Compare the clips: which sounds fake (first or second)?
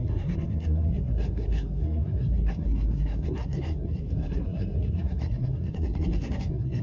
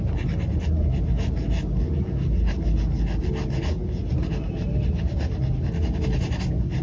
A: first